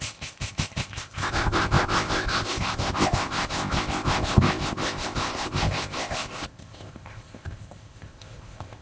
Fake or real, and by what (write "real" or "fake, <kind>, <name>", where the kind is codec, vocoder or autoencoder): fake, codec, ZipCodec